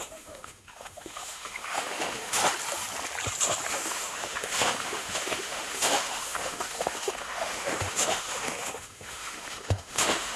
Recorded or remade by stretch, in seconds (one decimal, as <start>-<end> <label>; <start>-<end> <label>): 0.0-2.4 remade; 2.4-3.7 recorded; 3.7-10.4 remade